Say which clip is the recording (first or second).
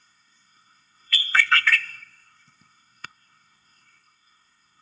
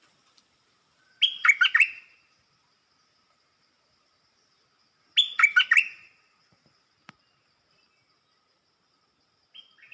second